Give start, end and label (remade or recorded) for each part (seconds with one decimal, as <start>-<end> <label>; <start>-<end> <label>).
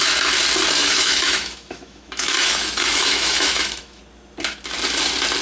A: 0.0-0.8 recorded; 0.8-4.0 remade; 4.0-5.4 recorded